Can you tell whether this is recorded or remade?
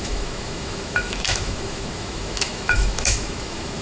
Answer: remade